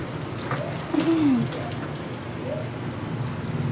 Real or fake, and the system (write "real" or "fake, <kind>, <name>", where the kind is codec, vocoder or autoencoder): real